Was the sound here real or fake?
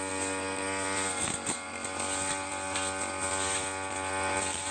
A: real